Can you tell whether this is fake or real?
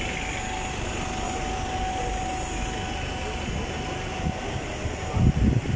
real